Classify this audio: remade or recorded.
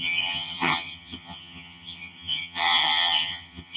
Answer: remade